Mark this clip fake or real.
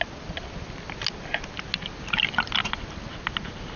real